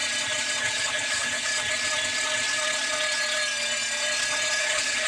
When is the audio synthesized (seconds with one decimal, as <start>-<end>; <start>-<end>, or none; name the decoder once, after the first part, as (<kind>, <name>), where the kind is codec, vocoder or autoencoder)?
0.6-1.5 (codec, HILCodec); 4.6-5.1